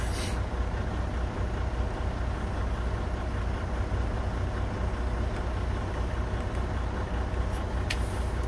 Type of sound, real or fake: real